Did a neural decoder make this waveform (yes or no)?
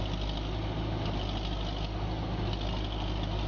no